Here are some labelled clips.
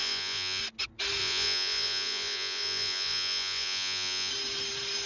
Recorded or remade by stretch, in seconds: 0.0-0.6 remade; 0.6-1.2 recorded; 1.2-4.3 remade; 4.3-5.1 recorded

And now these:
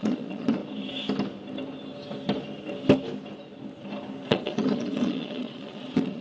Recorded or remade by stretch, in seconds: 0.0-0.6 remade; 0.6-4.3 recorded; 4.3-6.2 remade

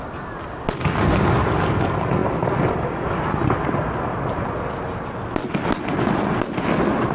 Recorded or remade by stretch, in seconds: 0.0-7.1 recorded

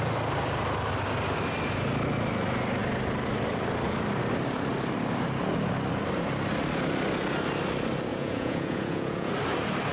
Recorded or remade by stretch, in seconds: 0.0-8.1 recorded; 8.1-9.3 remade; 9.3-9.9 recorded

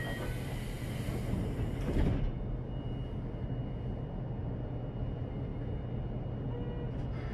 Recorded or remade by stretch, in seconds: 0.0-7.3 recorded

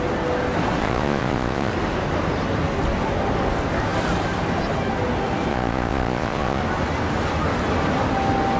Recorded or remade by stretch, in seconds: 0.0-0.8 recorded; 0.8-1.7 remade; 1.7-5.5 recorded; 5.5-6.6 remade; 6.6-8.6 recorded

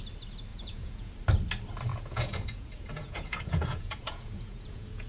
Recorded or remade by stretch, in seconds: 0.0-0.5 recorded; 0.5-1.1 remade; 1.1-1.9 recorded; 1.9-5.1 remade